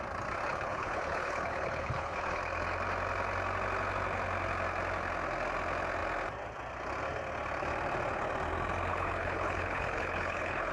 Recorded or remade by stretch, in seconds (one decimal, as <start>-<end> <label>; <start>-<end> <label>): 0.0-0.5 recorded; 0.5-2.4 remade; 2.4-8.9 recorded; 8.9-10.7 remade